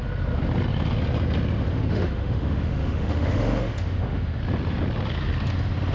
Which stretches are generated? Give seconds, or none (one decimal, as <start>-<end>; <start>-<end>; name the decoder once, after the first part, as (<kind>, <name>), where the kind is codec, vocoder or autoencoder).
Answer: 1.7-4.4 (autoencoder, DAC-VAE)